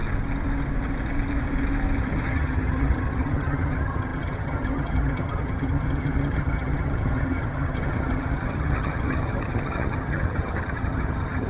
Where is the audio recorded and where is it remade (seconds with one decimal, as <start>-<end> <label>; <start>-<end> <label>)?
0.0-2.0 recorded; 2.0-11.5 remade